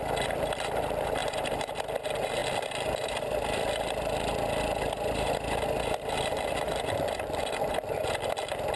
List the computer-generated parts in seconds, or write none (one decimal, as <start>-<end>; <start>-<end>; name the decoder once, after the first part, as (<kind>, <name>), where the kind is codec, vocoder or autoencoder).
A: 1.2-1.8 (vocoder, BigVGAN v2)